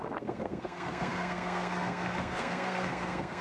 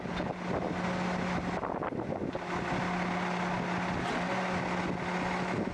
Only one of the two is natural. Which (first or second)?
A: second